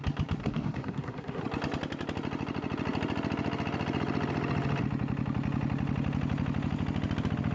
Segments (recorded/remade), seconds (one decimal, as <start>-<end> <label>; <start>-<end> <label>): 0.0-0.4 recorded; 0.4-1.4 remade; 1.4-7.5 recorded